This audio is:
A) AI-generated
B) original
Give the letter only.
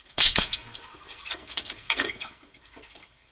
A